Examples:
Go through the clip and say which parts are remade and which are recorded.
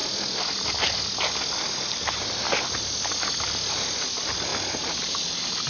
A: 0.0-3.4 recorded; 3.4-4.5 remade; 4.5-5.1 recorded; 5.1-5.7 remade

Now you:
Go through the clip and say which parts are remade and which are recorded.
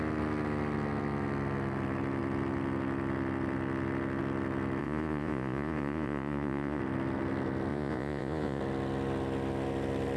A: 0.0-4.8 recorded; 4.8-6.8 remade; 6.8-7.7 recorded; 7.7-8.6 remade; 8.6-10.2 recorded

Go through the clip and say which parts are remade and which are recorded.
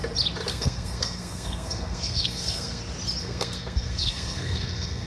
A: 0.0-0.5 recorded; 0.5-2.8 remade; 2.8-3.2 recorded; 3.2-5.1 remade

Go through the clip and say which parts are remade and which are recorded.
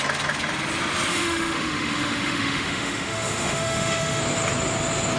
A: 0.0-1.1 recorded; 1.1-4.2 remade; 4.2-5.2 recorded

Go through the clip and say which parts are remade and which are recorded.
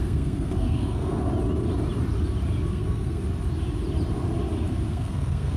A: 0.0-1.2 remade; 1.2-2.7 recorded; 2.7-3.2 remade; 3.2-4.9 recorded; 4.9-5.6 remade